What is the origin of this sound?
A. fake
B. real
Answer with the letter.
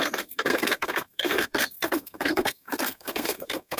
A